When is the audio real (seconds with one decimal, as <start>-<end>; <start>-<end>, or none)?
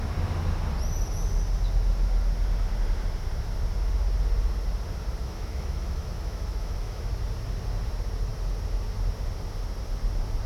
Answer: 0.0-5.2; 7.1-10.5